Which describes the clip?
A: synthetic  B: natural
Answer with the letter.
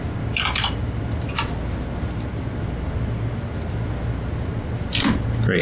B